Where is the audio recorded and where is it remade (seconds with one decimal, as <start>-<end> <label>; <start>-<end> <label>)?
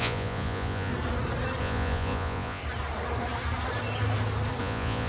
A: 0.0-0.9 remade; 0.9-1.6 recorded; 1.6-2.6 remade; 2.6-4.6 recorded; 4.6-5.1 remade